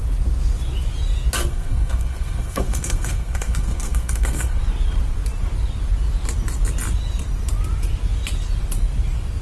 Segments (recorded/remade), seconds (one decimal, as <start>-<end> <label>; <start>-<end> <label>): 0.0-1.5 recorded; 1.5-4.6 remade; 4.6-9.4 recorded